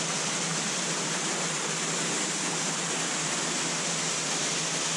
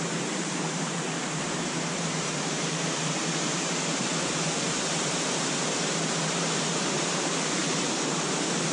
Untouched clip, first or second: first